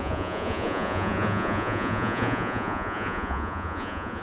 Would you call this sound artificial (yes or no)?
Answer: yes